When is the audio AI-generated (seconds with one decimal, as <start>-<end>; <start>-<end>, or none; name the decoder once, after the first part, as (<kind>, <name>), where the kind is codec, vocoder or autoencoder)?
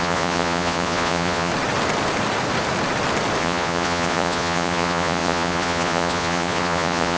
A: 0.0-1.5 (vocoder, Vocos); 3.4-7.2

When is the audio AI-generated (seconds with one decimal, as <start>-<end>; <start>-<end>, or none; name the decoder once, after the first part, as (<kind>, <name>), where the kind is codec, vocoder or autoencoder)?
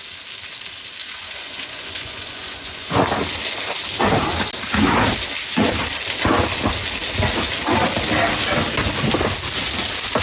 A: 1.0-3.0 (vocoder, Vocos)